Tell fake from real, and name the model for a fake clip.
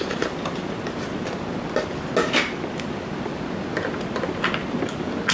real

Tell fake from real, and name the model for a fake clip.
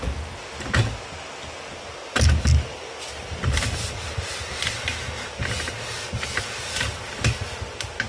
real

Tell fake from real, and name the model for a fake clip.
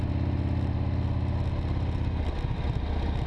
real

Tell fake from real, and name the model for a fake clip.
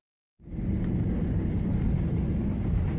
real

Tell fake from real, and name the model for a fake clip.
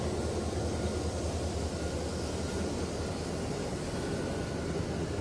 real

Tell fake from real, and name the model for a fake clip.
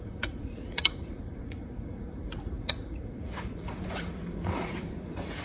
fake, vocoder, Vocos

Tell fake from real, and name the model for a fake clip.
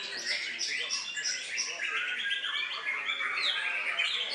real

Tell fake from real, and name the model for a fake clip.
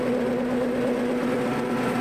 real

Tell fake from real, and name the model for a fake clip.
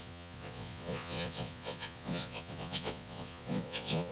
fake, vocoder, Vocos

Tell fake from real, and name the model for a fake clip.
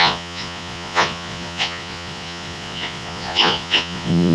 fake, vocoder, Vocos